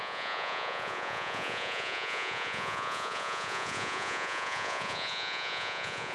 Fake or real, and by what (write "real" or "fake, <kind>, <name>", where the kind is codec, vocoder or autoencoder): fake, vocoder, Vocos